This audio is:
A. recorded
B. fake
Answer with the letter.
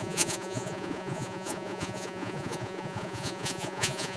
B